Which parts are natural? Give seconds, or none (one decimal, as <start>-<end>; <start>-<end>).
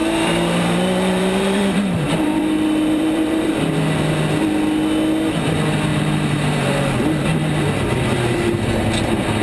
3.5-5.9; 7.0-9.4